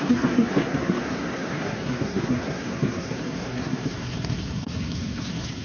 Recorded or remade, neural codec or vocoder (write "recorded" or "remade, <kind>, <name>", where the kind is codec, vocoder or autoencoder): remade, codec, SNAC